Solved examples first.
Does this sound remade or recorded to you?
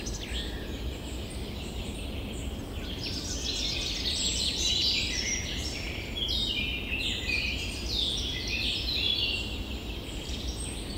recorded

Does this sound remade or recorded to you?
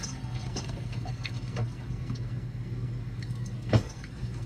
remade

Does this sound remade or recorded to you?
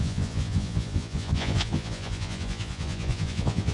remade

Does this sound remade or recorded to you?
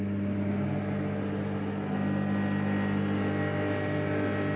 recorded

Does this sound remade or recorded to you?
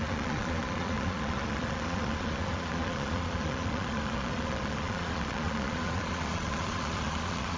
remade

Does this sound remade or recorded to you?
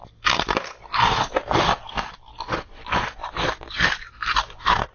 recorded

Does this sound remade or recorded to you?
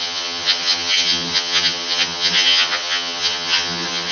remade